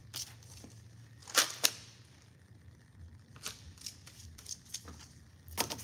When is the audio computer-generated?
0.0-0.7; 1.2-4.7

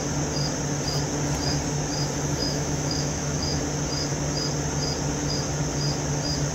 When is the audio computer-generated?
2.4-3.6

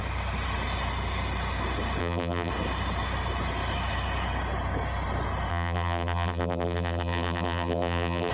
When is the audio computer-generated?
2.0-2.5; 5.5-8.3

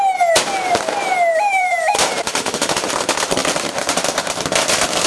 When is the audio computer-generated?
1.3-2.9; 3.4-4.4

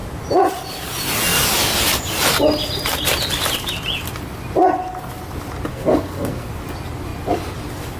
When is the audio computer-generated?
5.7-6.5

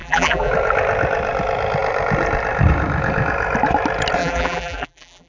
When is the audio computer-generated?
0.0-0.5; 4.2-5.3